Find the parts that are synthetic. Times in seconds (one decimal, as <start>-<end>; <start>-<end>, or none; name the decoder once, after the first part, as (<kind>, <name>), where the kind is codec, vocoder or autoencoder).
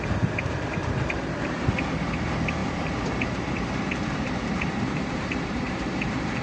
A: 0.8-1.7 (vocoder, BigVGAN v2); 2.6-6.4